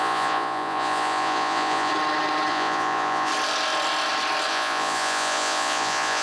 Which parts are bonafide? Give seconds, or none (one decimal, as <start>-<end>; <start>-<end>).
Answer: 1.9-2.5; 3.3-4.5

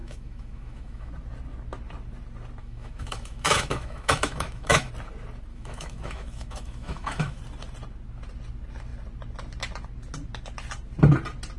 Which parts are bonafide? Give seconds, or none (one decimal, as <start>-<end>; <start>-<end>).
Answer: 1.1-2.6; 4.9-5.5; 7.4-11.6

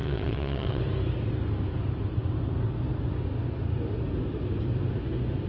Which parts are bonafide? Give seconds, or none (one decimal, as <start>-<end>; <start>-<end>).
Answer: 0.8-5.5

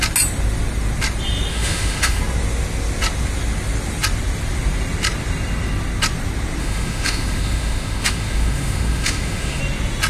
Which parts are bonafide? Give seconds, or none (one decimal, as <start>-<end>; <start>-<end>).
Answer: 0.0-1.5; 2.2-6.6; 9.6-10.1